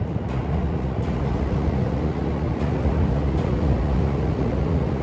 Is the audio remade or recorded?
remade